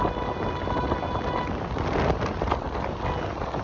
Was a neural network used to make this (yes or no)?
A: no